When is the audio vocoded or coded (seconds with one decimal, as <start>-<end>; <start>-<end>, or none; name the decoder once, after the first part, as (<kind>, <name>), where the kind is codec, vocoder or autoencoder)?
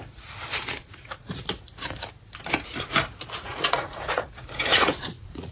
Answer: 0.5-1.3 (vocoder, Vocos); 3.5-5.5